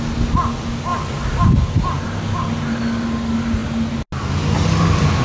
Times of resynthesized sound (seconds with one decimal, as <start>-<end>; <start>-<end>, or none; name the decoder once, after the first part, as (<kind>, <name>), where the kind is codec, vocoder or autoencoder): none